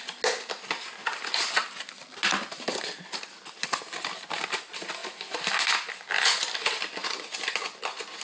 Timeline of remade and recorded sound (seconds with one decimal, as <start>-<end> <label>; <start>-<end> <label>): 0.0-7.0 recorded; 7.0-7.6 remade; 7.6-8.2 recorded